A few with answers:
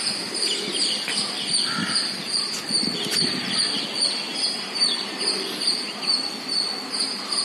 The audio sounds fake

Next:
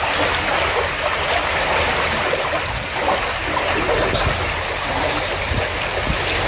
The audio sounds real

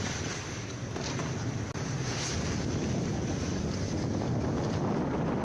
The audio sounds real